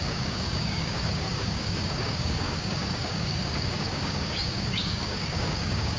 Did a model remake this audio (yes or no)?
yes